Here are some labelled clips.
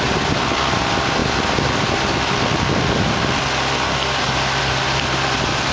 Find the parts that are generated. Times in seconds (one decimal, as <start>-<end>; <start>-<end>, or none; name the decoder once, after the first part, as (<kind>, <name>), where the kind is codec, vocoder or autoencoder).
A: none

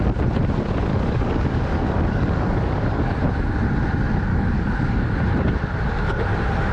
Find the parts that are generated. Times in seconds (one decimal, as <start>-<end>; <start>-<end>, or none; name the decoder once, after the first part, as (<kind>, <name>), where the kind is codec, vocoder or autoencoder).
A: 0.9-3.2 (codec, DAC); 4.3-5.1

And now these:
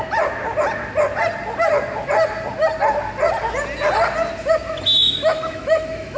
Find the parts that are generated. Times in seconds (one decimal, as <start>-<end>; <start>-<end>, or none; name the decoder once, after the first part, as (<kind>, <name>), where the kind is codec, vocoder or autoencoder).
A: 5.0-6.2 (autoencoder, DAC-VAE)

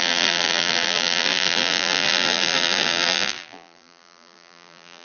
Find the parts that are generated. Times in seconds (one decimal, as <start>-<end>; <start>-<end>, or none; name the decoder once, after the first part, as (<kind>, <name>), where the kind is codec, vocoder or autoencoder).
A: 0.0-5.0 (vocoder, BigVGAN v2)

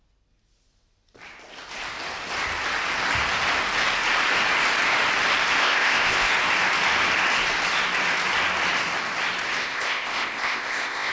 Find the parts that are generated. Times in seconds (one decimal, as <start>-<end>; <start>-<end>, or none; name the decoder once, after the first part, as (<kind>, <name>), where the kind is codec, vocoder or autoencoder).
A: 5.6-6.3 (codec, ZipCodec); 9.6-11.1

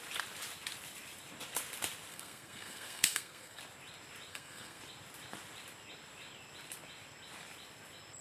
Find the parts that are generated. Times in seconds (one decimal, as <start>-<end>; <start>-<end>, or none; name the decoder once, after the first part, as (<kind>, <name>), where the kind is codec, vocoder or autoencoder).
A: 2.1-3.6 (codec, SNAC); 4.3-4.8

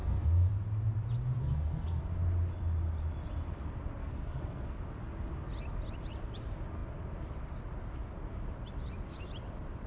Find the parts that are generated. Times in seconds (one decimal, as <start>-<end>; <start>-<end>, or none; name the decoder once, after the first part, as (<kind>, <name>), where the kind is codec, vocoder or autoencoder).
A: 0.0-0.5 (codec, SNAC); 1.4-2.0; 4.0-4.8